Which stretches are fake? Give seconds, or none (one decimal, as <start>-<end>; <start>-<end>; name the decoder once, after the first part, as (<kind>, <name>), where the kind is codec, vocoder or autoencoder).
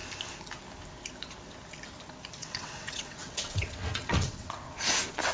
2.4-4.7 (vocoder, WaveNeXt)